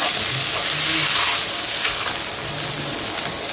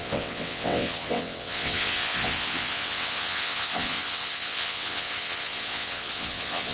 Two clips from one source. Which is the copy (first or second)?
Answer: second